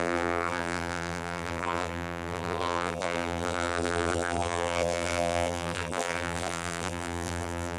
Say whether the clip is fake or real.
fake